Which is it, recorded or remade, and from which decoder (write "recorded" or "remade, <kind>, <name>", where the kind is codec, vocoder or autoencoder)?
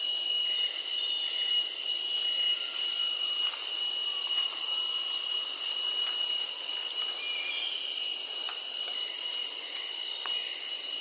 recorded